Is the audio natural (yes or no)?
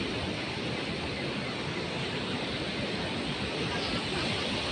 yes